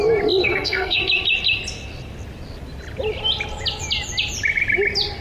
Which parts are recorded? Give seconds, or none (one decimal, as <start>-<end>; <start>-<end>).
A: 0.0-0.4; 1.0-5.2